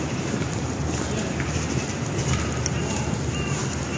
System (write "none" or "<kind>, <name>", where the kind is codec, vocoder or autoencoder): none